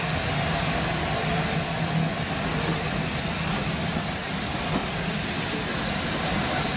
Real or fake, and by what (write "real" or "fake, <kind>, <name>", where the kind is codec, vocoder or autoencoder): real